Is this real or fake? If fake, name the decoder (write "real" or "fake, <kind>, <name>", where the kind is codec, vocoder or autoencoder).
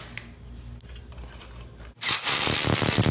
real